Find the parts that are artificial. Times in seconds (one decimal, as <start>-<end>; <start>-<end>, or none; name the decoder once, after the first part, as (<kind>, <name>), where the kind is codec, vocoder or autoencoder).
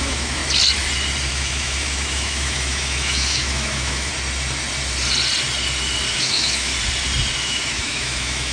0.0-0.4 (autoencoder, DAC-VAE); 1.3-4.1; 6.1-6.7; 7.4-8.5